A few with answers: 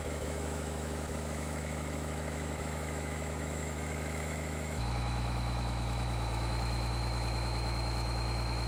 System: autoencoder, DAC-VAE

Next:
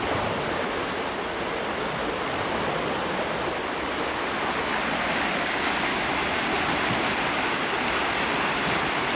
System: none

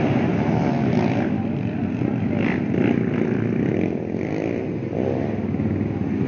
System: none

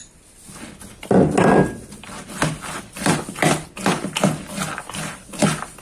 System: none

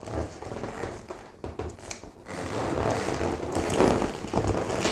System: none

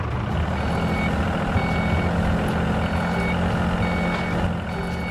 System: none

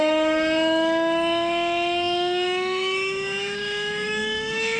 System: autoencoder, DAC-VAE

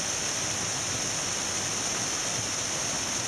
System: none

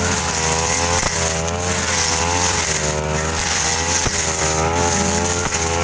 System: none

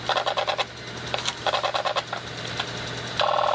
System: none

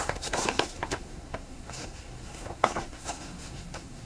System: codec, SNAC